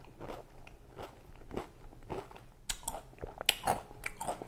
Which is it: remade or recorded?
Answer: recorded